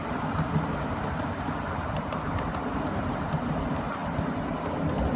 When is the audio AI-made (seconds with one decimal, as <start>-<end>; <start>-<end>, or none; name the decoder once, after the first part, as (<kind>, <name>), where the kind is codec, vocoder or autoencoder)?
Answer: none